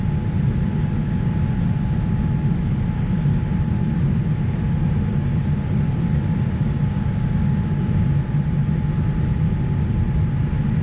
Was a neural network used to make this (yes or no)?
no